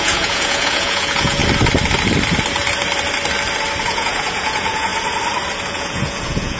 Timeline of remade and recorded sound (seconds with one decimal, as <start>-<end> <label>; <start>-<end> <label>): 0.0-1.4 remade; 1.4-3.8 recorded; 3.8-4.9 remade; 4.9-5.7 recorded; 5.7-6.6 remade